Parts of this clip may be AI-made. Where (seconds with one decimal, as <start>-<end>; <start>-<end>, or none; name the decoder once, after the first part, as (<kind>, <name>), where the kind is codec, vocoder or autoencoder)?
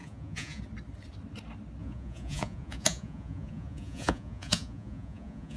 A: 0.0-0.6 (vocoder, Vocos); 1.8-5.6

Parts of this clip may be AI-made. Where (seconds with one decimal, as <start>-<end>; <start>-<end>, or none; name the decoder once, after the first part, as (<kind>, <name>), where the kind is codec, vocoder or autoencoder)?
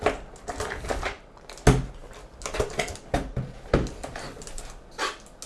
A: none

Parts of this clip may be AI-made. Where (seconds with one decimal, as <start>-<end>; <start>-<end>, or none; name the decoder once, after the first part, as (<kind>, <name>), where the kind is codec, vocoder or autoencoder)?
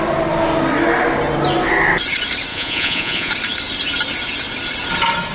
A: 2.5-3.3 (vocoder, Vocos)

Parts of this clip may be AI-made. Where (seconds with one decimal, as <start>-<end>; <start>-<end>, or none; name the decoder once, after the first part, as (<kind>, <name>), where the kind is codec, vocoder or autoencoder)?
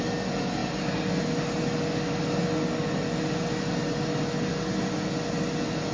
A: none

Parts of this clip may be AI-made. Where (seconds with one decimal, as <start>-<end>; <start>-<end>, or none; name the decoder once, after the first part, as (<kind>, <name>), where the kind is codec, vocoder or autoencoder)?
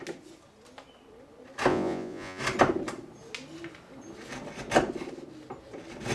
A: 1.7-2.4 (vocoder, Vocos)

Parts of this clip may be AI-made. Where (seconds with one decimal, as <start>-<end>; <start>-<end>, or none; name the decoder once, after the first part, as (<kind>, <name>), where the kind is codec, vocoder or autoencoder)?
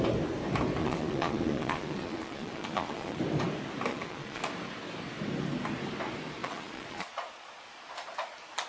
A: 0.8-3.2 (vocoder, Vocos); 3.9-4.4; 6.4-7.7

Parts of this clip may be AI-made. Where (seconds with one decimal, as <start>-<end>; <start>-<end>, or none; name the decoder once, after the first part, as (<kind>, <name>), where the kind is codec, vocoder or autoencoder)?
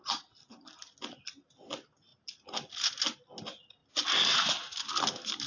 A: none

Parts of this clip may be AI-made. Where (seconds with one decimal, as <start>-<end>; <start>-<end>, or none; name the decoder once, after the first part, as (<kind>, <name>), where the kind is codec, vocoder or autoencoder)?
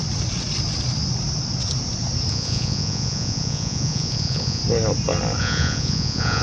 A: 2.3-4.6 (vocoder, Vocos); 5.4-6.4